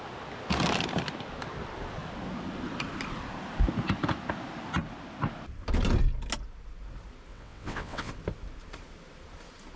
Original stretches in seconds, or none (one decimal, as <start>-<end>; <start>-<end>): 0.0-7.3; 8.1-9.8